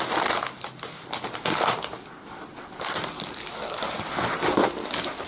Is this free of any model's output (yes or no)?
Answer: yes